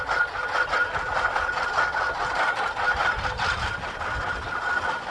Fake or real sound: real